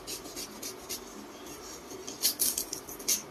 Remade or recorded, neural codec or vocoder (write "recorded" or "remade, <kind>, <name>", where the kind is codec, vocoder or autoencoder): recorded